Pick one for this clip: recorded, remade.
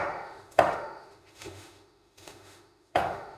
remade